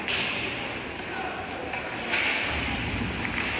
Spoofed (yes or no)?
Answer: no